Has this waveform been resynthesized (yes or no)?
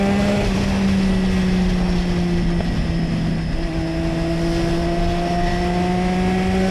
no